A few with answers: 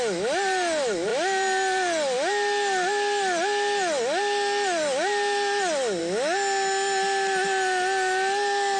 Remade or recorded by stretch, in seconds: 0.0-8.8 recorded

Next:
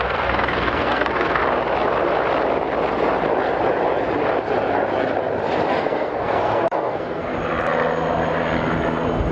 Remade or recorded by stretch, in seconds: 0.0-1.4 remade; 1.4-5.7 recorded; 5.7-7.3 remade; 7.3-9.3 recorded

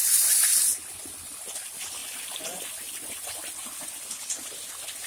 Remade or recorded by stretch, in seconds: 0.0-5.1 recorded

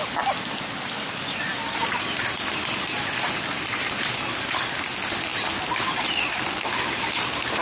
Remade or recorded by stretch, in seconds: 0.0-7.6 recorded

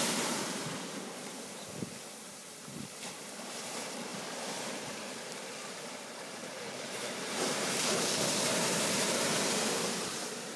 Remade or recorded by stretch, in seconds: 0.0-0.6 remade; 0.6-2.5 recorded; 2.5-10.6 remade

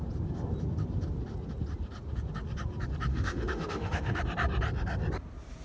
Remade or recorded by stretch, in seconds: 0.0-3.1 recorded; 3.1-4.2 remade; 4.2-5.6 recorded